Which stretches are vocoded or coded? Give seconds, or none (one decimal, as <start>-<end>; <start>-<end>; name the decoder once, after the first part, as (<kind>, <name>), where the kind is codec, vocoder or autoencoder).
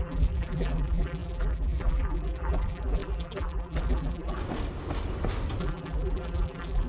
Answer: 0.0-4.4 (vocoder, BigVGAN v2); 5.6-6.9